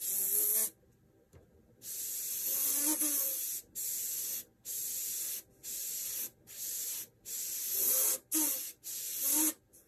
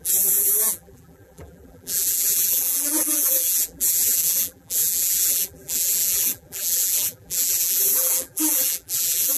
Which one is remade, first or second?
second